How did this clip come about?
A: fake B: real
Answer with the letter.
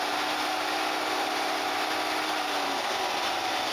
B